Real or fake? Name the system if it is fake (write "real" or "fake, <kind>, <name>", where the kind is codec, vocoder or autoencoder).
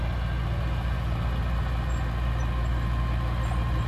real